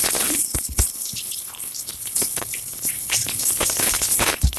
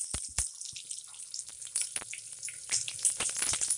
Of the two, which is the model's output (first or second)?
first